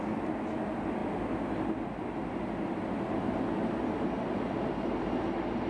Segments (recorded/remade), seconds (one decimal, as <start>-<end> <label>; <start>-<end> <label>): 0.0-5.7 recorded